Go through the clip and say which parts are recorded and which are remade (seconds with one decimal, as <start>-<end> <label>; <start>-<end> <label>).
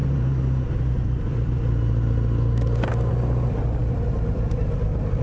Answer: 0.0-5.2 recorded